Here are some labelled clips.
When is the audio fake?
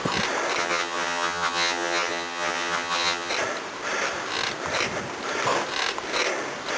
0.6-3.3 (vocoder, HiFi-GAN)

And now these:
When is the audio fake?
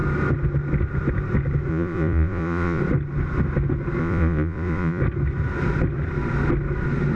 1.7-2.8 (vocoder, Vocos); 4.0-5.0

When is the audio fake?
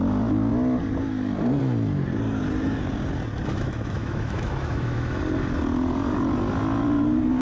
3.5-5.2 (autoencoder, DAC-VAE)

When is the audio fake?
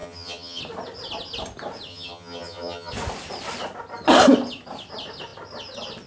0.0-0.6 (vocoder, HiFi-GAN); 1.9-2.9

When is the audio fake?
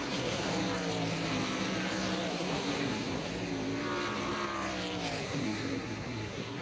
0.0-0.5 (codec, SNAC); 2.3-3.3; 5.2-6.6